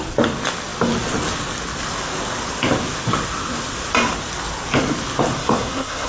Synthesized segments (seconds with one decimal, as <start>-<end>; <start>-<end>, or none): 5.4-6.1